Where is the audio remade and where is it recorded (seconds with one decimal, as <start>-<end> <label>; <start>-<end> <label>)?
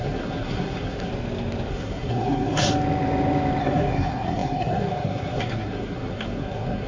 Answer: 0.0-1.1 remade; 1.1-1.7 recorded; 1.7-2.7 remade; 2.7-3.6 recorded; 3.6-6.9 remade